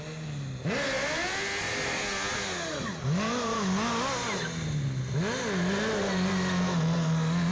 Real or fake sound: real